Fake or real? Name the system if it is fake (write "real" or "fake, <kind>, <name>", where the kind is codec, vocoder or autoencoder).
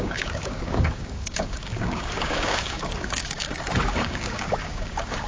fake, codec, DAC